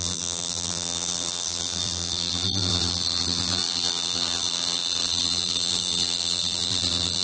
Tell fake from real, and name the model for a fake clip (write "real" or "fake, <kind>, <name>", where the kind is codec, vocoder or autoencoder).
fake, vocoder, BigVGAN v2